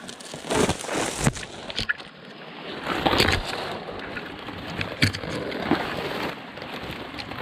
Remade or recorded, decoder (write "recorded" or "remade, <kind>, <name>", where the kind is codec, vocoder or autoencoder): recorded